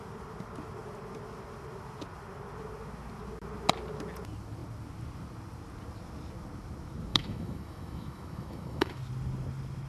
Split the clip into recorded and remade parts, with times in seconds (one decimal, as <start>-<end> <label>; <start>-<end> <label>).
0.0-7.1 recorded; 7.1-9.0 remade; 9.0-9.9 recorded